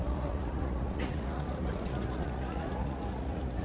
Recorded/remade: remade